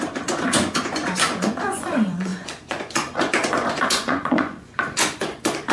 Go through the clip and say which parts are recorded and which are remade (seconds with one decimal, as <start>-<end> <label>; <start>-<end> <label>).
0.0-5.7 remade